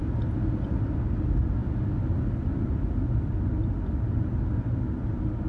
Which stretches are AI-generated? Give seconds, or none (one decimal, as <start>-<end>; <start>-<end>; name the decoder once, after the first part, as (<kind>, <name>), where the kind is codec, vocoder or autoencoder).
none